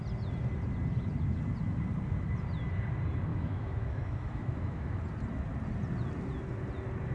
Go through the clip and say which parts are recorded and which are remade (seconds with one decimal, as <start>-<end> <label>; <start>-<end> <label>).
0.0-3.3 recorded; 3.3-5.0 remade; 5.0-7.1 recorded

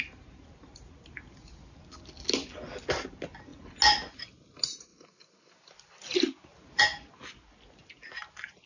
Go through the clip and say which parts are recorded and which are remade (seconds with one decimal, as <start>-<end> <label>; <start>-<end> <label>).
0.0-8.7 recorded

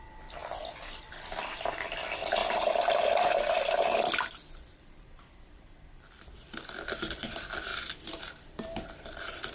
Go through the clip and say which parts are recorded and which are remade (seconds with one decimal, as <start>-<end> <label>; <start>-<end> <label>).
0.0-0.4 remade; 0.4-1.0 recorded; 1.0-7.7 remade; 7.7-8.3 recorded; 8.3-9.5 remade

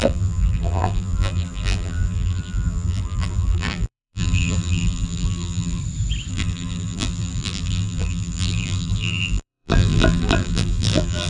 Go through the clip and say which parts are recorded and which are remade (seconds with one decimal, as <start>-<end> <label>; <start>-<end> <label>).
0.0-5.8 remade; 5.8-6.3 recorded; 6.3-11.3 remade